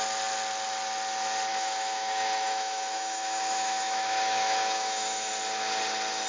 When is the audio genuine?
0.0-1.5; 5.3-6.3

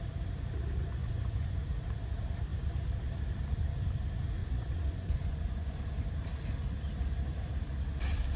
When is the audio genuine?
0.0-1.0; 1.6-4.4; 5.8-8.4

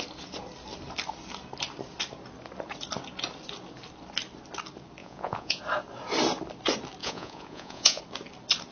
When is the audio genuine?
0.0-5.0; 5.6-7.0; 8.0-8.7

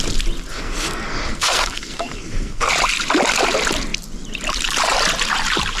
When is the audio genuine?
0.0-0.5; 2.7-5.8

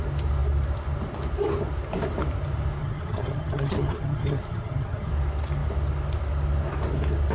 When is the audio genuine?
0.0-2.8; 5.1-7.3